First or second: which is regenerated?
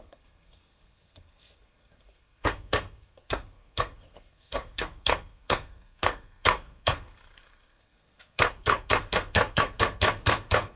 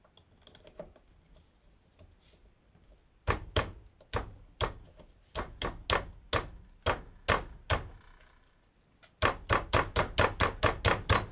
first